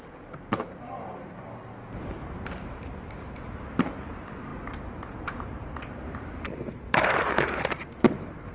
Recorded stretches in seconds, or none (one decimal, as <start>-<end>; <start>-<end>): none